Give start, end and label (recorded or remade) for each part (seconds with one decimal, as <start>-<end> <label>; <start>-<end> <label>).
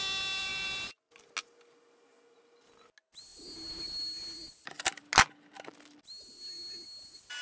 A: 0.0-3.3 recorded; 3.3-5.0 remade; 5.0-7.4 recorded